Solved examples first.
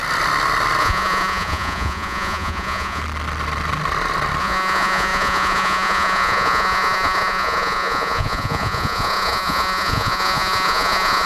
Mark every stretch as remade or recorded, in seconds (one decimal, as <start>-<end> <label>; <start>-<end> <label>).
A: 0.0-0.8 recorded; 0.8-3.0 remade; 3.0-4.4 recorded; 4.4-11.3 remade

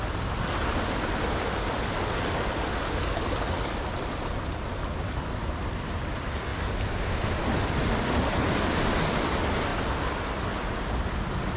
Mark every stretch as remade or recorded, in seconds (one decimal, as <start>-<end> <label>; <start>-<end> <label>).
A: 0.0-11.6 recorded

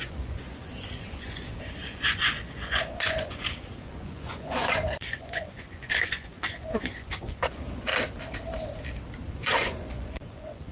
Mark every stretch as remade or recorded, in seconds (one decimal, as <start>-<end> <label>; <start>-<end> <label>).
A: 0.0-7.9 remade; 7.9-9.3 recorded; 9.3-10.7 remade

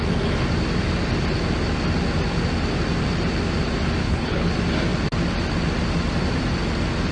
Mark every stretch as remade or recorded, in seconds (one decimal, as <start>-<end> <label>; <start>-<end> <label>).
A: 0.0-4.0 recorded; 4.0-4.5 remade; 4.5-7.1 recorded